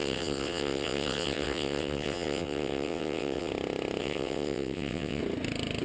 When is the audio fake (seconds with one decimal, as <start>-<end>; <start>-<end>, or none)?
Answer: 0.0-3.5; 4.0-5.2